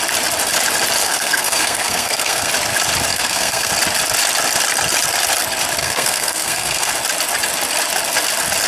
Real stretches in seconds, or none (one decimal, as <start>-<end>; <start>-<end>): 0.0-1.0; 2.5-3.1; 3.7-5.8; 6.9-8.7